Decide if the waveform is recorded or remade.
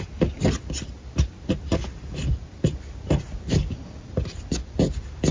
recorded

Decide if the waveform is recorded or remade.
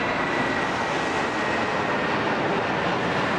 recorded